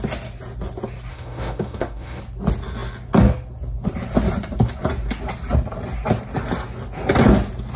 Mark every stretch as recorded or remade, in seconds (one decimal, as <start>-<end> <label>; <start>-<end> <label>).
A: 0.0-1.1 recorded; 1.1-2.2 remade; 2.2-7.8 recorded

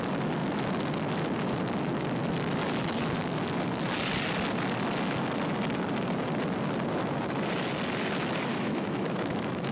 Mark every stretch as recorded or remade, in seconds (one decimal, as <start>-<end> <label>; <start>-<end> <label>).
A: 0.0-8.5 recorded; 8.5-9.7 remade

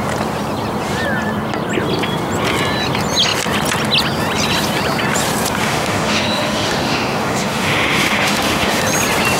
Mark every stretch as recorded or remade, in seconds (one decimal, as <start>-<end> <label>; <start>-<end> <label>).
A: 0.0-5.6 recorded; 5.6-8.8 remade; 8.8-9.4 recorded

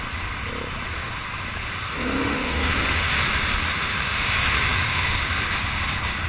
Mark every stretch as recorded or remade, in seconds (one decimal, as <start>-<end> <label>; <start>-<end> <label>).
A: 0.0-1.9 recorded; 1.9-3.1 remade; 3.1-3.5 recorded; 3.5-5.3 remade; 5.3-6.3 recorded

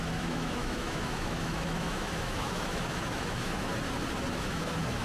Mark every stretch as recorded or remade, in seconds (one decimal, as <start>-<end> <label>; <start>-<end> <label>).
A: 0.0-3.7 remade; 3.7-4.3 recorded; 4.3-5.0 remade